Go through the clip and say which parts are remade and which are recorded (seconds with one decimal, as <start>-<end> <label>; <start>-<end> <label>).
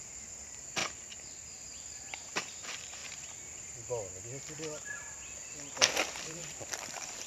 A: 0.0-0.8 remade; 0.8-1.6 recorded; 1.6-3.0 remade; 3.0-6.0 recorded; 6.0-7.3 remade